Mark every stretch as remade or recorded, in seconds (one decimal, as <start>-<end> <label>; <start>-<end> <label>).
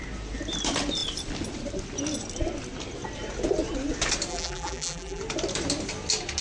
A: 0.0-4.3 recorded; 4.3-5.2 remade; 5.2-6.4 recorded